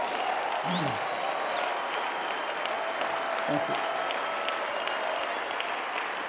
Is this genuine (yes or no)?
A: yes